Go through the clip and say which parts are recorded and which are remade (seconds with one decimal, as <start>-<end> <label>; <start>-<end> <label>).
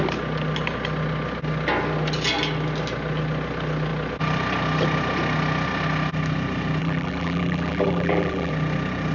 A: 0.0-6.8 recorded; 6.8-8.5 remade; 8.5-9.1 recorded